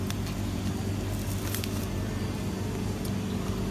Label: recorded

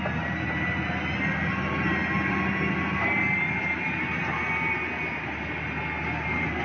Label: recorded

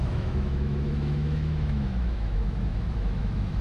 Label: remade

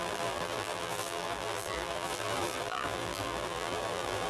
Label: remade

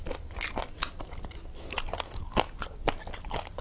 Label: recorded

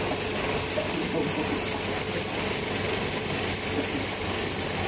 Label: recorded